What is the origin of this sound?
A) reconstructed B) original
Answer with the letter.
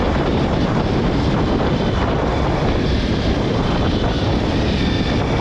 A